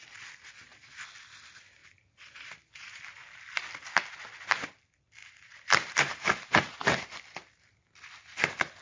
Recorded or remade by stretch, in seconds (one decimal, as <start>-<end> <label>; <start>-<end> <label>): 0.0-1.8 recorded; 1.8-3.3 remade; 3.3-5.2 recorded; 5.2-7.0 remade; 7.0-8.8 recorded